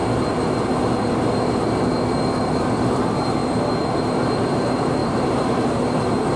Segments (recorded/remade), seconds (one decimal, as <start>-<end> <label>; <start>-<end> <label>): 0.0-2.8 recorded; 2.8-3.4 remade; 3.4-4.5 recorded; 4.5-6.4 remade